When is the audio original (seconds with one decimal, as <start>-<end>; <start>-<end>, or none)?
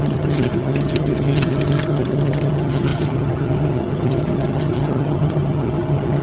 none